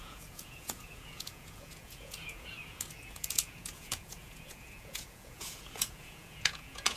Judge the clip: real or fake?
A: fake